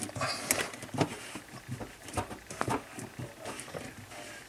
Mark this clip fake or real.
real